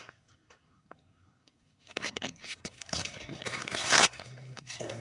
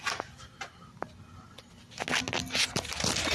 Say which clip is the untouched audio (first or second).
second